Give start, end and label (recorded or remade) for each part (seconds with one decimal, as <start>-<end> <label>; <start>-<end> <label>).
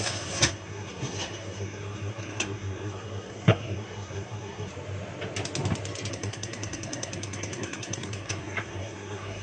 0.0-4.7 remade; 4.7-6.1 recorded; 6.1-9.4 remade